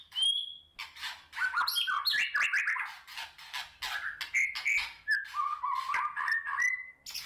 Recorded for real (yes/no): yes